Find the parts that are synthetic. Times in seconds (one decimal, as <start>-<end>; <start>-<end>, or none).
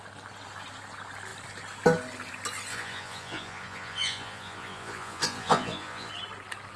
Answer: 2.7-6.1